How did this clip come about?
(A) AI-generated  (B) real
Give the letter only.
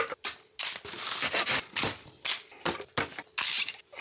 B